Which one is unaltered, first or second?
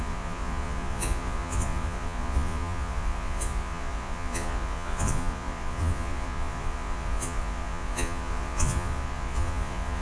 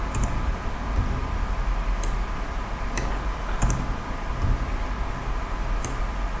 second